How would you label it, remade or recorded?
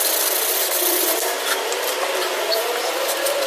recorded